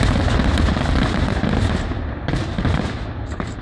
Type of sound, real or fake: real